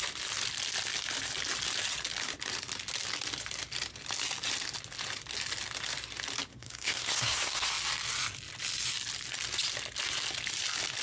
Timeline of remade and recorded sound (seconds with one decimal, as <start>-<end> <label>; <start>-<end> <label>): 0.0-6.5 recorded; 6.5-7.7 remade; 7.7-11.0 recorded